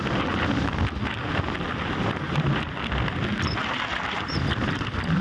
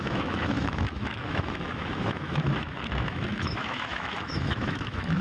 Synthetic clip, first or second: second